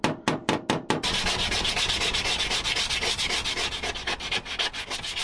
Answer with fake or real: real